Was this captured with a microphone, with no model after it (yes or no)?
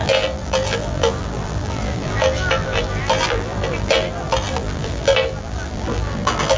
no